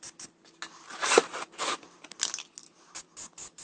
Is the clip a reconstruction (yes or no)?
no